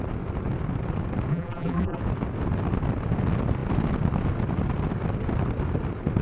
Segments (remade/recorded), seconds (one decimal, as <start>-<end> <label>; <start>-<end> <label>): 0.0-1.3 recorded; 1.3-2.0 remade; 2.0-6.2 recorded